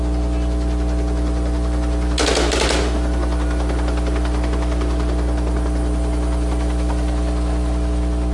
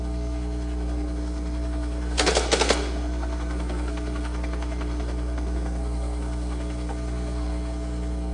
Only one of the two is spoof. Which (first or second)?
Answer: second